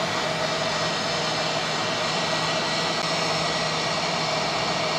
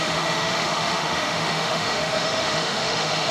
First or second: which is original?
first